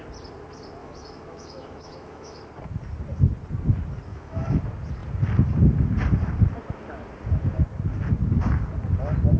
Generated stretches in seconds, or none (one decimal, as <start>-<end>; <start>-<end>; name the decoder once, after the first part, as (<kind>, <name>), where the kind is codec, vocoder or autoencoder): 0.8-2.4 (autoencoder, DAC-VAE); 4.1-4.6